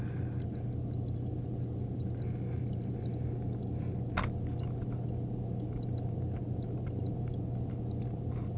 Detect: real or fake real